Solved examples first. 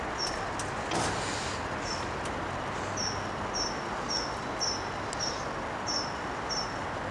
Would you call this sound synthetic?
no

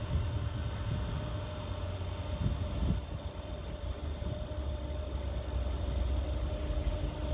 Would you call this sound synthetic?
no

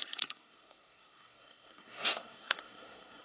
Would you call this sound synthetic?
yes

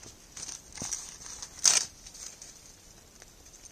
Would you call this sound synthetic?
no